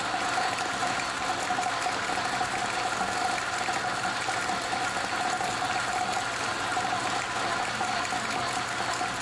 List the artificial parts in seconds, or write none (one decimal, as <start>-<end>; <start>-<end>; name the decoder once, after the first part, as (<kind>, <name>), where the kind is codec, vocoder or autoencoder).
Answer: none